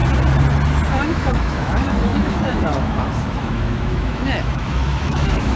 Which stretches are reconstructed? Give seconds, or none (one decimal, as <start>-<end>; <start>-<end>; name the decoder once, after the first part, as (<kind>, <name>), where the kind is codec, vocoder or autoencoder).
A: 0.9-5.6 (autoencoder, DAC-VAE)